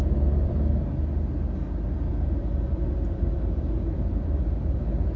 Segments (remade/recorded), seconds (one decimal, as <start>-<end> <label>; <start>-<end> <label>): 0.0-0.7 remade; 0.7-2.1 recorded; 2.1-4.6 remade; 4.6-5.2 recorded